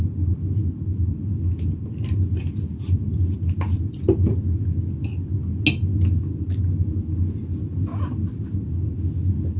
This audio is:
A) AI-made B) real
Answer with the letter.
B